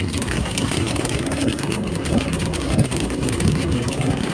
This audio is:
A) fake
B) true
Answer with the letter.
A